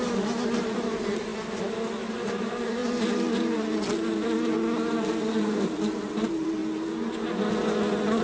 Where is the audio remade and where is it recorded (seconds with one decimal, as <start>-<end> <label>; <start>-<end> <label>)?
0.0-1.3 remade; 1.3-2.1 recorded; 2.1-2.8 remade; 2.8-5.2 recorded; 5.2-6.6 remade; 6.6-8.2 recorded